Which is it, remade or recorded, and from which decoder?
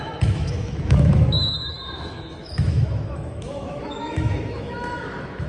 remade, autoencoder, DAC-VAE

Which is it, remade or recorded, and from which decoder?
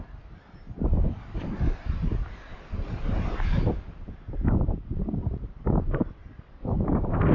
recorded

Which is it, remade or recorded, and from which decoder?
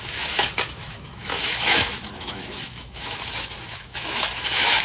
remade, autoencoder, DAC-VAE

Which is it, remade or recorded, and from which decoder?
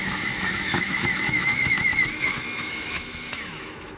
remade, autoencoder, DAC-VAE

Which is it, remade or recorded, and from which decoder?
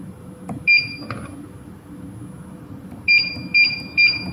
recorded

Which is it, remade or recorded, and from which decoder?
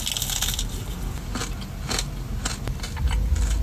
recorded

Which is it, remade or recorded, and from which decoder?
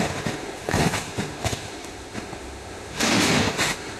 remade, autoencoder, DAC-VAE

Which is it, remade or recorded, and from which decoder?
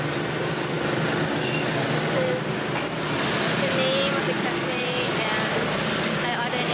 recorded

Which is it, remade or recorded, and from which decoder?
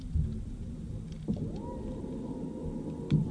recorded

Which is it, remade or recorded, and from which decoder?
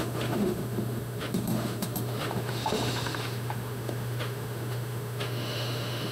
remade, autoencoder, DAC-VAE